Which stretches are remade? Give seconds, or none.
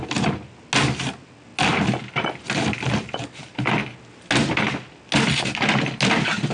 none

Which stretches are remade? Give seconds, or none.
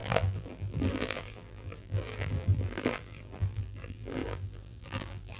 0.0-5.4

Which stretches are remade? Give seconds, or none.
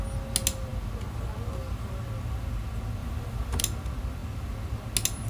3.0-3.6